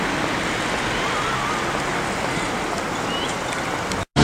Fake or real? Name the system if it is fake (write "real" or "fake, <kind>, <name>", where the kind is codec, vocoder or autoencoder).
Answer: real